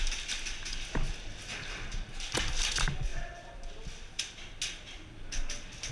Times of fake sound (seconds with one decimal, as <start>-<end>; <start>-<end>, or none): none